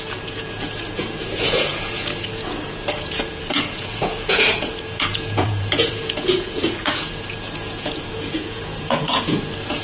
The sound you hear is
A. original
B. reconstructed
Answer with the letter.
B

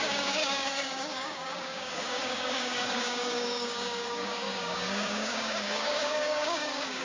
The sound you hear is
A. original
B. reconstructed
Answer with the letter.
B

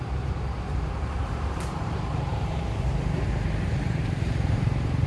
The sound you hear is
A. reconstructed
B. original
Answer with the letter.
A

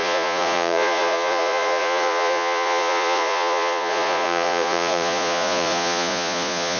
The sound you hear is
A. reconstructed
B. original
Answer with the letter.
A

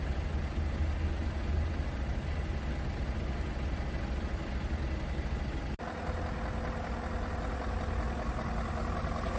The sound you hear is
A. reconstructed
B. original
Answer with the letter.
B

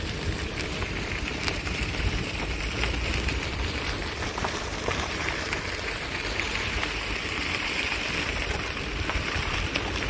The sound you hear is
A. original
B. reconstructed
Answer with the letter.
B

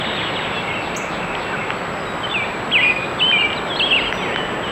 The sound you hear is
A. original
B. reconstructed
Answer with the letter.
A